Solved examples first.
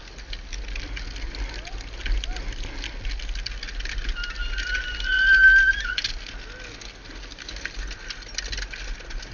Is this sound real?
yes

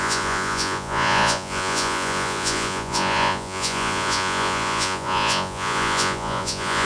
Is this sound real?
no